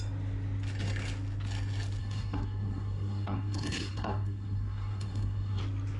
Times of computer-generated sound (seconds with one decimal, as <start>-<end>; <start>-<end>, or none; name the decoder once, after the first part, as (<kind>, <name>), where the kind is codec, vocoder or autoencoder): 2.0-5.6 (codec, SNAC)